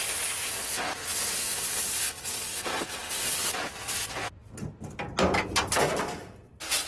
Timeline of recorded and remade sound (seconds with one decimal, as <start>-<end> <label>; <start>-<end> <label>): 0.0-6.9 recorded